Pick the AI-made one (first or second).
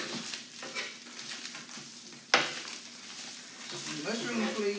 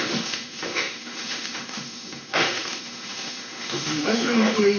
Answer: second